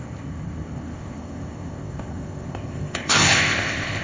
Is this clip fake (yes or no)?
yes